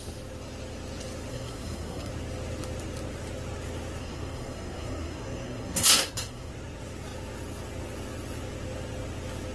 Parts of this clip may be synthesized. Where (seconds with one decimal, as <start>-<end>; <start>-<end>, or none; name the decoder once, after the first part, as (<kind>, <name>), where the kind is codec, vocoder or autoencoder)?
1.3-2.1 (codec, SNAC); 4.0-6.5